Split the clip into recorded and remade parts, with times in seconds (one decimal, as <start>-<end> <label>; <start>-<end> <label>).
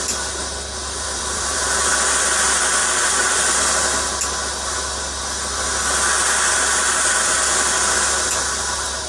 0.0-0.8 recorded; 0.8-1.9 remade; 1.9-2.8 recorded; 2.8-3.7 remade; 3.7-9.1 recorded